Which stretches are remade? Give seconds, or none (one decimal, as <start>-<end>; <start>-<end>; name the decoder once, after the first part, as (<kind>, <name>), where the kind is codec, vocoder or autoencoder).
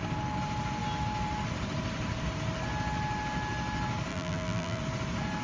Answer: 4.1-4.8 (vocoder, BigVGAN v2)